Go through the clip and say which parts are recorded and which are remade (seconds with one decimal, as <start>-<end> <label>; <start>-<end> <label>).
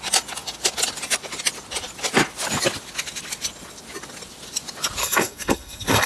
0.0-5.0 recorded; 5.0-6.1 remade